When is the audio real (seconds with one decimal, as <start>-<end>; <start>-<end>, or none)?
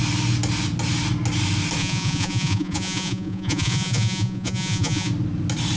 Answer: 0.0-1.8; 5.1-5.8